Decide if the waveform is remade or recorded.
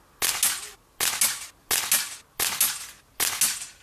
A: recorded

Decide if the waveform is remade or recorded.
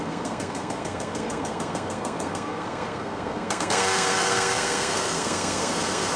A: remade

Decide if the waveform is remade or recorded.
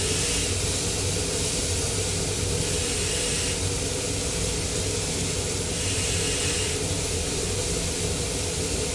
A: recorded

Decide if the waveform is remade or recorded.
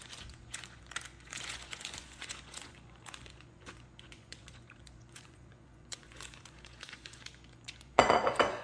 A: remade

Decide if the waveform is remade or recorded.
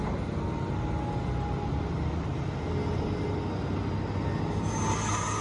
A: recorded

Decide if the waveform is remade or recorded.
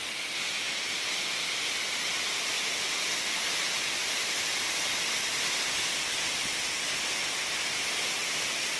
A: recorded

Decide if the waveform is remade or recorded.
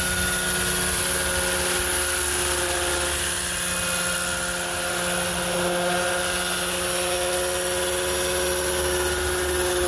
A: recorded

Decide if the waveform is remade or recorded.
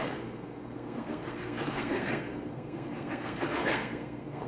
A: remade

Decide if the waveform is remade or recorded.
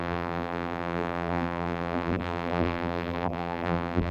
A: remade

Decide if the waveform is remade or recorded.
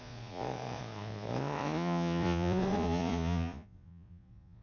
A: remade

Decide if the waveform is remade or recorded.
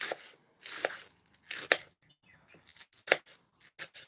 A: recorded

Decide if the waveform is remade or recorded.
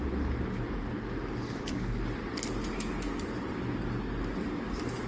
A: recorded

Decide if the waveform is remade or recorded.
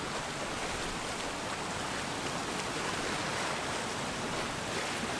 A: recorded